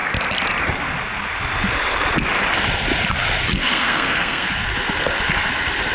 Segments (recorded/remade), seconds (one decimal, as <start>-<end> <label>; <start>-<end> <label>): 0.0-3.5 recorded; 3.5-4.5 remade; 4.5-5.9 recorded